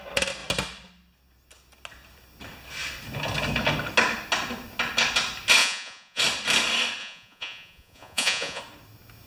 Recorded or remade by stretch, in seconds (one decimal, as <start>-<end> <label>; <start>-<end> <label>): 0.0-5.6 recorded; 5.6-6.2 remade; 6.2-7.0 recorded; 7.0-8.6 remade; 8.6-9.3 recorded